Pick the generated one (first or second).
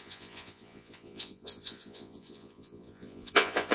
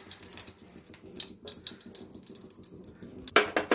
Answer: first